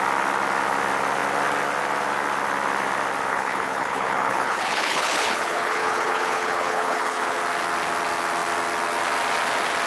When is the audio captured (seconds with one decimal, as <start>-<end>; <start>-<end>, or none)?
0.0-3.3; 7.4-9.9